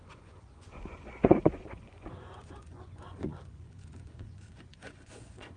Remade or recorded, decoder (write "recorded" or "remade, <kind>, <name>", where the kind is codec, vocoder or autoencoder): remade, vocoder, Vocos